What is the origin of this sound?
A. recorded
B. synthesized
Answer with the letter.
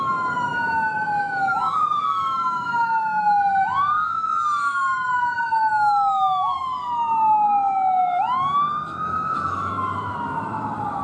B